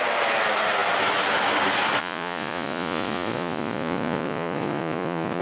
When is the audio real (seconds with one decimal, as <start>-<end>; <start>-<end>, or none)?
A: 0.0-2.0